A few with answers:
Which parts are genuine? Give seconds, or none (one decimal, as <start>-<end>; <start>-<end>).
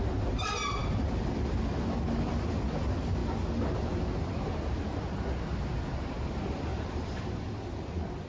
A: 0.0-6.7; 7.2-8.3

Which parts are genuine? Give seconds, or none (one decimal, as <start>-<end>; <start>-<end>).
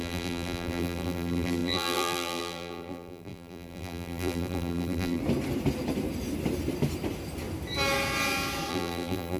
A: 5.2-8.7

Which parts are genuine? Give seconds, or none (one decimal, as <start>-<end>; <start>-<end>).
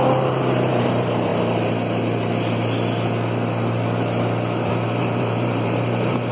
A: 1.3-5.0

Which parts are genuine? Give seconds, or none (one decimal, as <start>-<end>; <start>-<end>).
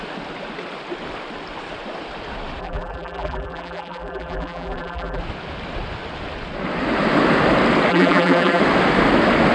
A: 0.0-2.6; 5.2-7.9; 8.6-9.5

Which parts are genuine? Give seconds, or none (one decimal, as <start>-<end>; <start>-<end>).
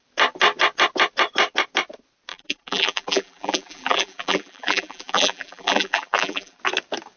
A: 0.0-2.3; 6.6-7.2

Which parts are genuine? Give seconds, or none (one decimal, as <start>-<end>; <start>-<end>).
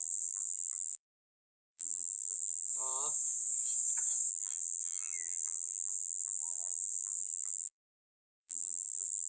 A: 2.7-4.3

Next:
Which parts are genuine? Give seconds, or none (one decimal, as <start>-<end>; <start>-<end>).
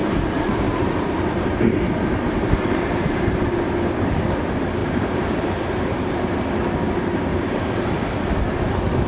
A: 2.9-4.8; 6.4-9.1